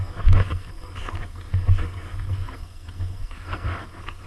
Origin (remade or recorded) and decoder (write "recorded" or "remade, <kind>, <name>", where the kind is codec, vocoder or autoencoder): remade, codec, SNAC